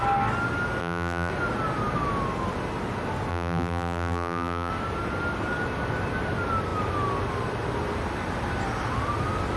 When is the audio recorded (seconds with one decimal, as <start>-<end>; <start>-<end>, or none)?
0.0-0.8; 1.3-3.3; 4.7-9.6